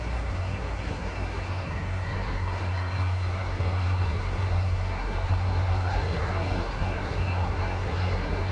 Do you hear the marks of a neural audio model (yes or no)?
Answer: yes